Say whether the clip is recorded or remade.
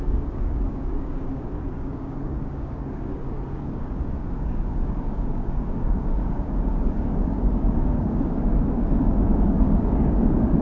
remade